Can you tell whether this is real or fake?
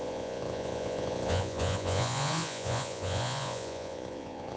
fake